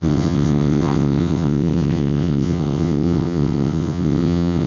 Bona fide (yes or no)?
no